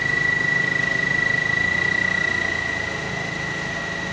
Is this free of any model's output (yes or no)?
yes